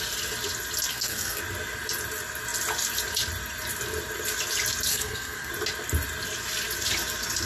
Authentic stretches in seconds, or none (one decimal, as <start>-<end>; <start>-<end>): 0.0-0.9; 1.4-4.9; 5.5-7.5